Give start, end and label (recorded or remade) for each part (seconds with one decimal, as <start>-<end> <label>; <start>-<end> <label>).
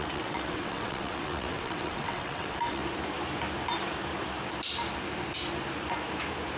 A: 0.0-2.8 remade; 2.8-6.6 recorded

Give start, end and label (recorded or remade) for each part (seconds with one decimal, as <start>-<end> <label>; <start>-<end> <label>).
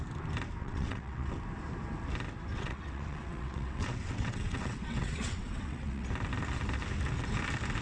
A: 0.0-0.6 recorded; 0.6-1.3 remade; 1.3-2.5 recorded; 2.5-6.1 remade; 6.1-7.8 recorded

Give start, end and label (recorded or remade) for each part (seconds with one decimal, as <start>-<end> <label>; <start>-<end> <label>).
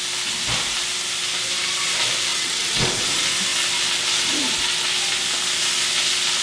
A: 0.0-2.3 recorded; 2.3-2.9 remade; 2.9-6.4 recorded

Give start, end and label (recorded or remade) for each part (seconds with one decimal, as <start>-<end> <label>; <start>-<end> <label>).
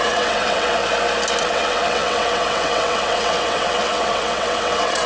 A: 0.0-0.8 remade; 0.8-1.4 recorded; 1.4-5.1 remade